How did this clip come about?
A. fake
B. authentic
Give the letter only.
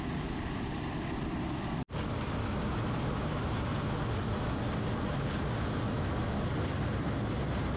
B